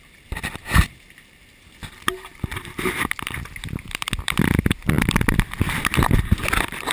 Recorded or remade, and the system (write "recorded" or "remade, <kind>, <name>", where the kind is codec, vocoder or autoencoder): remade, vocoder, BigVGAN v2